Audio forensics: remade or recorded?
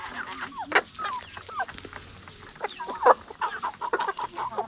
recorded